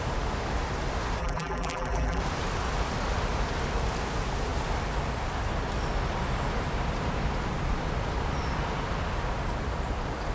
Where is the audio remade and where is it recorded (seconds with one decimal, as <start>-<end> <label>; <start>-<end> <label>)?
0.0-1.2 recorded; 1.2-2.2 remade; 2.2-10.3 recorded